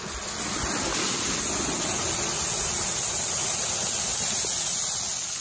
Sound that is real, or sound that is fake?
real